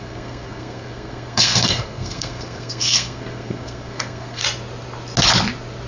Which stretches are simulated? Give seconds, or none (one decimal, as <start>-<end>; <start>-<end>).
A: 0.0-4.4